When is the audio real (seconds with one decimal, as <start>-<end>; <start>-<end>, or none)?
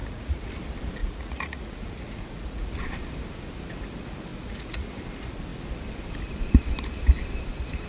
0.5-1.0; 2.7-4.3; 4.9-7.9